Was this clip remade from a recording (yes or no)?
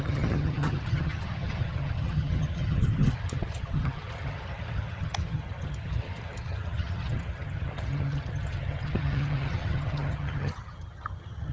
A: yes